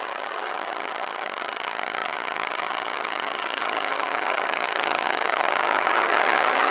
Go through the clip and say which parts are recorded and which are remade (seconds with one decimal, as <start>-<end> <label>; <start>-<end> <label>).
0.0-6.7 remade